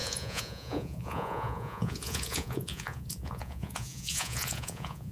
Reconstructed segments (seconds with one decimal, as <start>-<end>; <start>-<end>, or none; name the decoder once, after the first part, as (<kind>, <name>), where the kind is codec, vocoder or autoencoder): 0.0-5.1 (vocoder, Vocos)